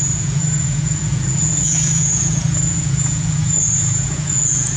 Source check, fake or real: fake